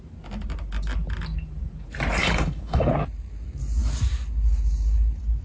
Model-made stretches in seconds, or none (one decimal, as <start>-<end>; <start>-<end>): 2.2-2.9

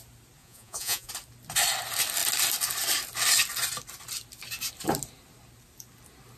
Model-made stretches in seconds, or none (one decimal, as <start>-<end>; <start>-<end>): 0.4-1.1

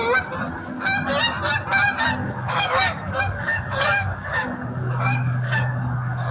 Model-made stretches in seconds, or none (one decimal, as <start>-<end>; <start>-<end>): 2.2-6.3

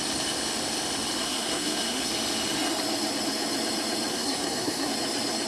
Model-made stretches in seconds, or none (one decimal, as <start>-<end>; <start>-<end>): 1.2-2.1; 4.1-4.9

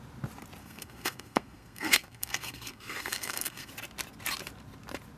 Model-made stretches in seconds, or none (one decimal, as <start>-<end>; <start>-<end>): 0.6-3.7